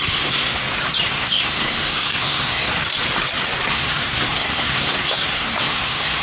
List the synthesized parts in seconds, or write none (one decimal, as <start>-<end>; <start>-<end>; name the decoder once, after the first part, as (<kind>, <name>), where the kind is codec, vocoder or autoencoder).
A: 0.0-0.6 (codec, SNAC); 1.1-2.7; 3.7-6.2